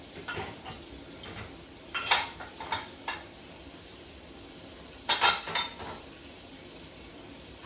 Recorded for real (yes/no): no